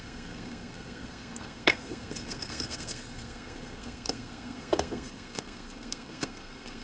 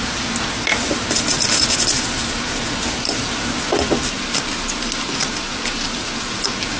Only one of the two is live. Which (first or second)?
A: second